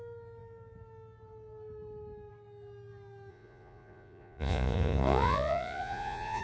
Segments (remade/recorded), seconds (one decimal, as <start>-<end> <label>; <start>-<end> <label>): 0.0-3.3 recorded; 3.3-6.4 remade